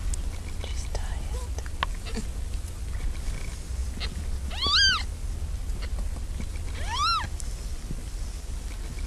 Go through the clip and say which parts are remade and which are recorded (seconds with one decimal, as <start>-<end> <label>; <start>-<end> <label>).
0.0-9.1 recorded